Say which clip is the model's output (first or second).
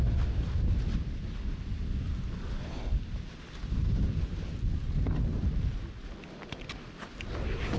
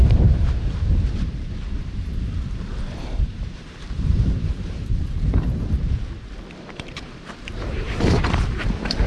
second